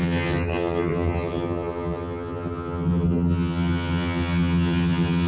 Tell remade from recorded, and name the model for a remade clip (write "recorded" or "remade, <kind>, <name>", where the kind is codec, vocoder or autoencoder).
remade, vocoder, HiFi-GAN